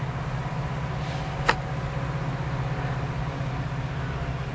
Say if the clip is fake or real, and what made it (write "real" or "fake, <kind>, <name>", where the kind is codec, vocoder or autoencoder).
real